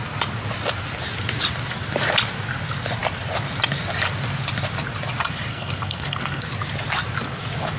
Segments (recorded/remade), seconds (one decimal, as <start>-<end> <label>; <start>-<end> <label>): 0.0-5.5 recorded; 5.5-6.4 remade; 6.4-7.8 recorded